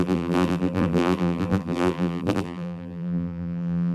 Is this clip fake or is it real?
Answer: fake